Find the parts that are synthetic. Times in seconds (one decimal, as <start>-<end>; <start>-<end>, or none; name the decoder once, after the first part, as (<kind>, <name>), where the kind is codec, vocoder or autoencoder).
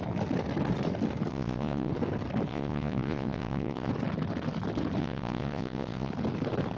1.3-1.9 (vocoder, Vocos); 2.5-3.9; 5.0-6.1